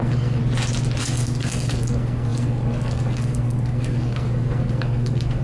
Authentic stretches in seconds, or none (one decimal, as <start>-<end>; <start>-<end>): 0.4-1.0